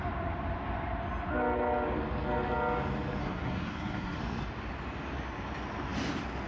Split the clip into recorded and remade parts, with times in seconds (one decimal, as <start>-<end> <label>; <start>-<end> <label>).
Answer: 0.0-3.2 recorded; 3.2-4.2 remade; 4.2-6.5 recorded